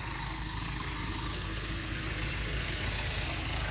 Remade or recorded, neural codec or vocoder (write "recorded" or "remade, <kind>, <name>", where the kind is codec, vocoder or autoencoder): remade, codec, SNAC